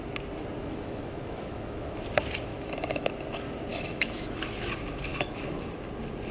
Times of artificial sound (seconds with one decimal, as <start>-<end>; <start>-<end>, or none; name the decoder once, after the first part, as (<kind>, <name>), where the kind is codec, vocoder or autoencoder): 0.6-2.0 (autoencoder, DAC-VAE); 2.5-3.1; 3.7-4.5; 5.1-5.7